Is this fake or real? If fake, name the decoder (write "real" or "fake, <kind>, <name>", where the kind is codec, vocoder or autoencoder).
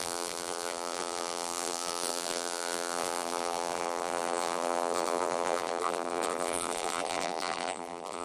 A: fake, vocoder, BigVGAN v2